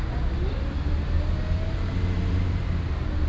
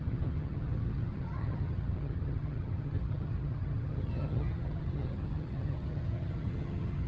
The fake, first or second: second